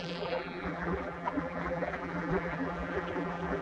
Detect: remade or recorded remade